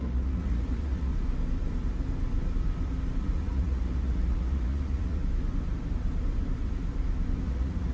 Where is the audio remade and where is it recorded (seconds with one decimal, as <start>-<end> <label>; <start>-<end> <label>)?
0.0-1.1 remade; 1.1-3.2 recorded; 3.2-5.2 remade; 5.2-7.4 recorded; 7.4-7.9 remade